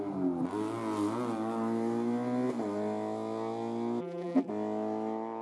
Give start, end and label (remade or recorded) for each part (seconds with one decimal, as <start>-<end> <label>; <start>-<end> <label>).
0.0-4.0 recorded; 4.0-4.5 remade; 4.5-5.4 recorded